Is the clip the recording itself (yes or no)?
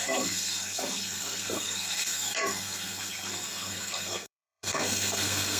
no